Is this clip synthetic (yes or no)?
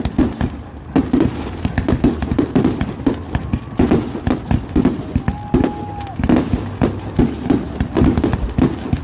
no